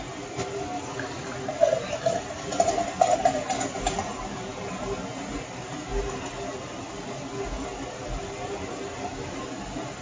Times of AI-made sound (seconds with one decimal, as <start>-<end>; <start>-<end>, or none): none